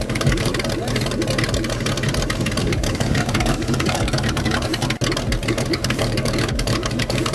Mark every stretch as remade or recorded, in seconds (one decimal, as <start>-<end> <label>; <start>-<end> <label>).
0.0-0.5 remade; 0.5-2.6 recorded; 2.6-4.7 remade; 4.7-5.5 recorded; 5.5-7.3 remade